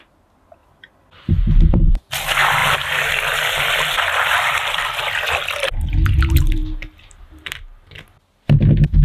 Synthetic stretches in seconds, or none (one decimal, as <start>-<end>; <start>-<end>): 0.6-1.9; 2.6-5.0